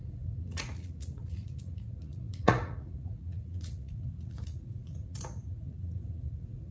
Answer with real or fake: fake